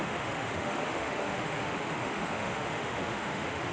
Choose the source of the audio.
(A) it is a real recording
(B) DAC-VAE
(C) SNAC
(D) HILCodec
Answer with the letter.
B